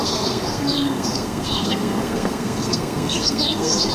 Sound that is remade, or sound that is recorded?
remade